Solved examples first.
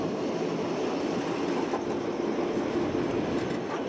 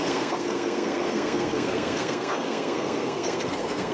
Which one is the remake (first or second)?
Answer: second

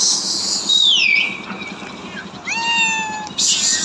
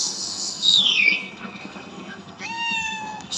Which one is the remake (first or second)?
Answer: second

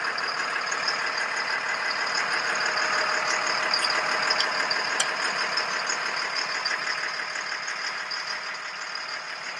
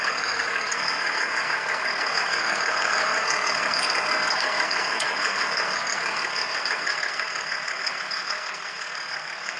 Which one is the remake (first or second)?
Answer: second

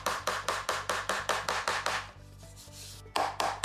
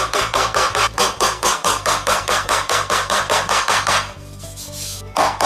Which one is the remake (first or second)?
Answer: second